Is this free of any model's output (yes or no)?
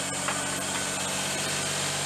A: yes